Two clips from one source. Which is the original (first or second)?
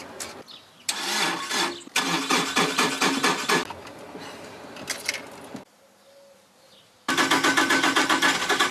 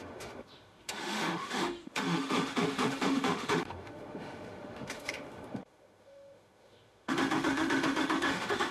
first